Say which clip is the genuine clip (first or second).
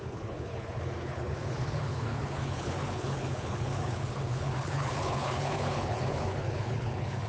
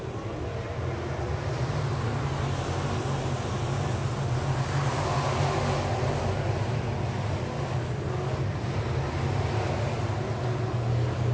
second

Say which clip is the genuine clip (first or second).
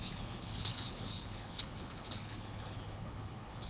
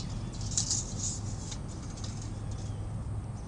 second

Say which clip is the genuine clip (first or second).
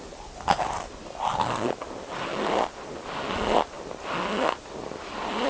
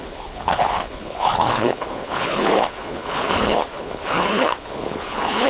first